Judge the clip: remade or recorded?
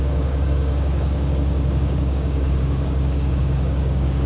remade